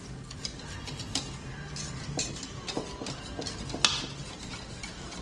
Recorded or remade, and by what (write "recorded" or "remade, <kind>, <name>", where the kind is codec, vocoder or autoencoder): recorded